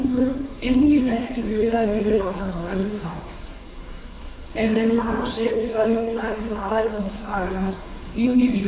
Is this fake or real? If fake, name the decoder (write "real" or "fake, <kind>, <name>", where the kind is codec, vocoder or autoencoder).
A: fake, codec, SNAC